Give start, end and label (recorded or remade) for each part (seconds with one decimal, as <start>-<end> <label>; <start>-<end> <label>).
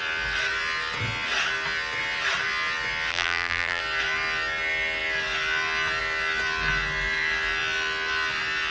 0.0-3.1 recorded; 3.1-3.8 remade; 3.8-8.7 recorded